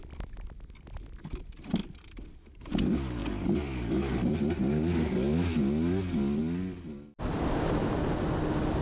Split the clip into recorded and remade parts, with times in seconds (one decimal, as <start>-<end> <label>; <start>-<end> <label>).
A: 0.0-8.8 recorded